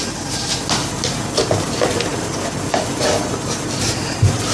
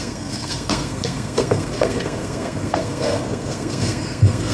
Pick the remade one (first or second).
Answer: second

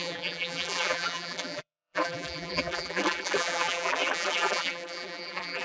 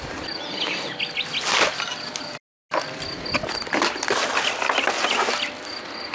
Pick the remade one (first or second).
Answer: first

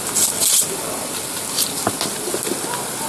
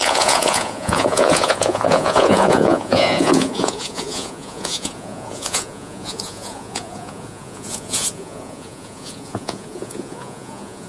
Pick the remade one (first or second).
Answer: second